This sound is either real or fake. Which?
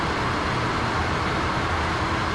real